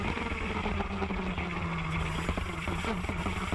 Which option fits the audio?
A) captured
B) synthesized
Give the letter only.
A